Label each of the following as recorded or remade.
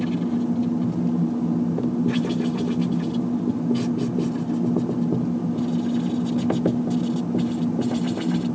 recorded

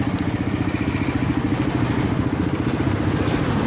recorded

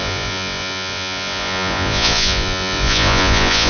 remade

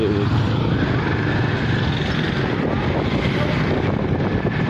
recorded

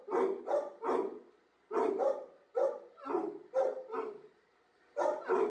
recorded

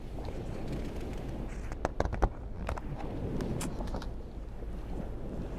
recorded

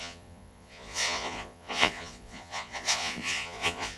remade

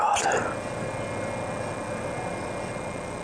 recorded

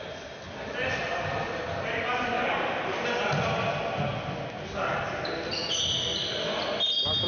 recorded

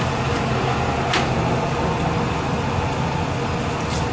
recorded